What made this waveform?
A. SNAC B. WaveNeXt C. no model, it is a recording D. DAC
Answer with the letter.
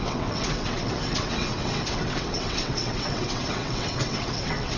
B